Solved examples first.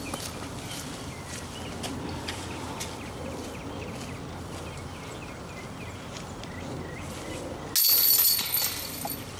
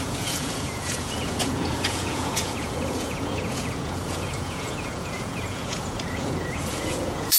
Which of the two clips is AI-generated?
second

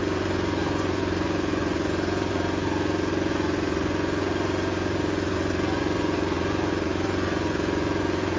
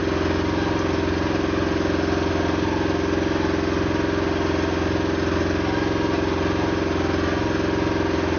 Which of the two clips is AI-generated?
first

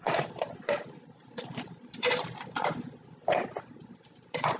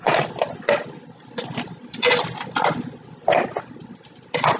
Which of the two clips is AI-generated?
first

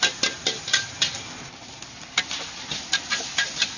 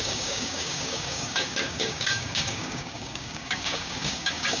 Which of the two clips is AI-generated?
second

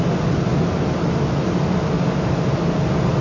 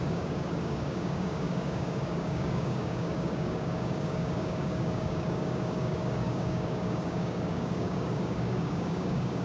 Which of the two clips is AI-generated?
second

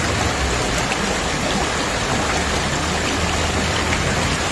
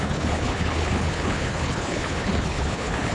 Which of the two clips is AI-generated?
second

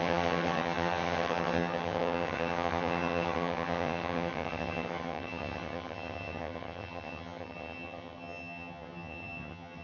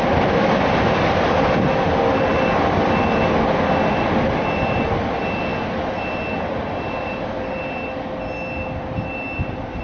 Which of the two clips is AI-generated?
first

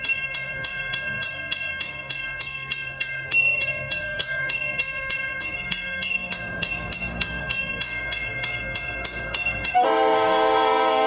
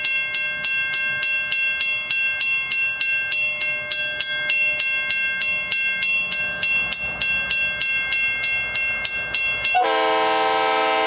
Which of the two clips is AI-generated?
first